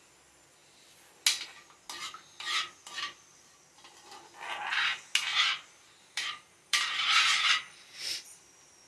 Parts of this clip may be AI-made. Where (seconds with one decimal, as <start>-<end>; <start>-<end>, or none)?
5.3-8.4